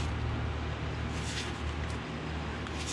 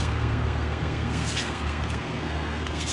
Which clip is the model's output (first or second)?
second